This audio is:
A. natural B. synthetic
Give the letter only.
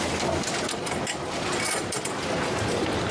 A